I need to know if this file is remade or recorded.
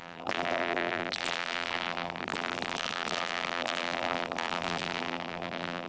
remade